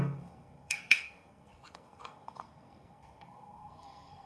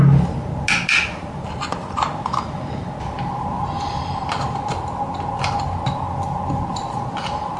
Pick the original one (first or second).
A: second